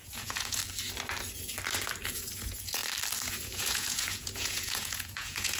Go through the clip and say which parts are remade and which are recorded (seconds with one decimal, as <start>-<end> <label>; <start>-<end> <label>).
0.0-0.6 remade; 0.6-2.1 recorded; 2.1-2.8 remade; 2.8-3.3 recorded; 3.3-5.6 remade